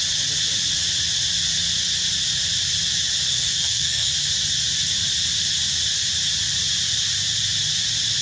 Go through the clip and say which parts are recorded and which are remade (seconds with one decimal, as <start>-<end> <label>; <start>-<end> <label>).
0.0-3.3 recorded; 3.3-4.1 remade; 4.1-8.2 recorded